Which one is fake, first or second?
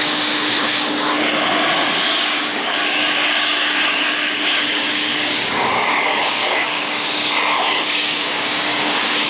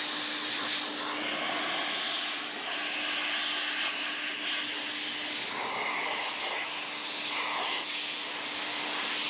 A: first